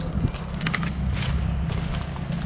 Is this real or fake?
real